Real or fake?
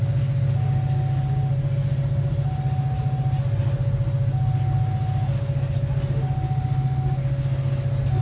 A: real